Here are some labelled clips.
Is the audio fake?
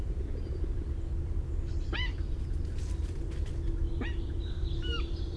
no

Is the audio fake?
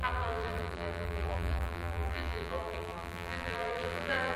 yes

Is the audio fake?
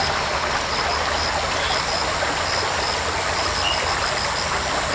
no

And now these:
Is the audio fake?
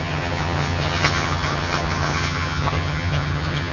yes